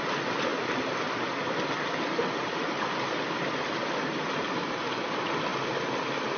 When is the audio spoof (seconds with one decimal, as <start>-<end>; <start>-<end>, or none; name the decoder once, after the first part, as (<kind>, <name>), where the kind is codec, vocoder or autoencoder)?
none